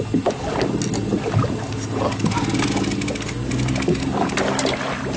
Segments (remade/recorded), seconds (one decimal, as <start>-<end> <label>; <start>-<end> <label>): 0.0-5.2 recorded